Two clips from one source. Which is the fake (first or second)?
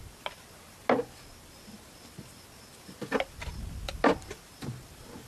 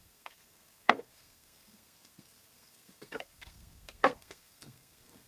second